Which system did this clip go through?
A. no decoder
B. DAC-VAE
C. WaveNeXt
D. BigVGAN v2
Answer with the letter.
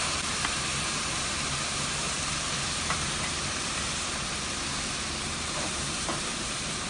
D